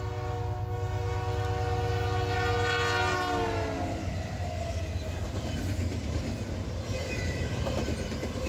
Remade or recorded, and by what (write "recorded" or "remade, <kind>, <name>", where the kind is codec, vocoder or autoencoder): recorded